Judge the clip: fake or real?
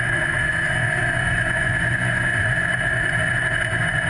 fake